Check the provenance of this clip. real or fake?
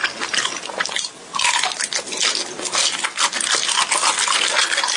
real